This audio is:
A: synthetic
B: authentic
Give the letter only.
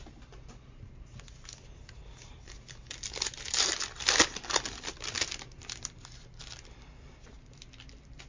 B